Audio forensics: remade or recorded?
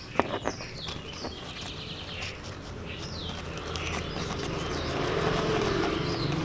recorded